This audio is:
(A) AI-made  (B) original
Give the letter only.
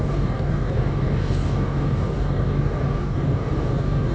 A